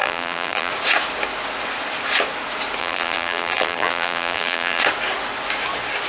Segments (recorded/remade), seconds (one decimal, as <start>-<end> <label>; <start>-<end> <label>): 0.0-0.7 remade; 0.7-2.8 recorded; 2.8-4.8 remade; 4.8-6.1 recorded